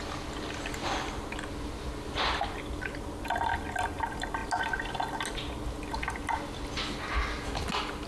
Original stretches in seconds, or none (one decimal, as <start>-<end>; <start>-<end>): 0.0-8.1